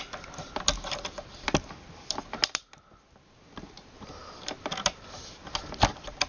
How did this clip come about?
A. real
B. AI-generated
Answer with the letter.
A